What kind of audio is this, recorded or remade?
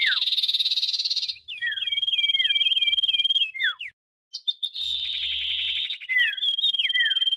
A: recorded